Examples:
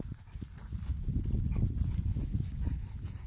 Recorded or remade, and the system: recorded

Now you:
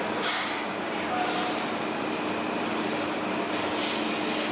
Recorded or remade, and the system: recorded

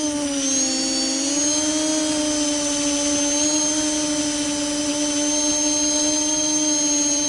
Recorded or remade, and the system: recorded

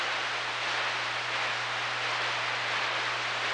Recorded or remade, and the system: recorded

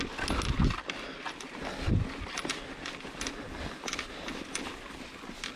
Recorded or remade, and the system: recorded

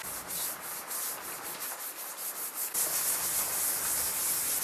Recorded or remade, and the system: recorded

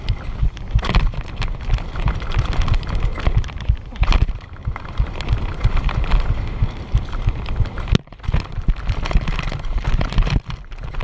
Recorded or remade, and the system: recorded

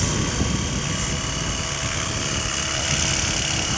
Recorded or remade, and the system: recorded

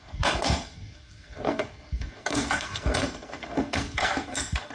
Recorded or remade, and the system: remade, codec, SNAC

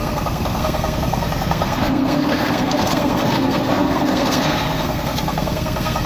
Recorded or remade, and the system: remade, codec, SNAC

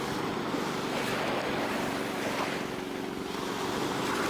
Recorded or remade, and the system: recorded